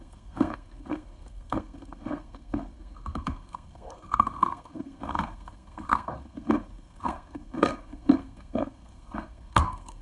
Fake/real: fake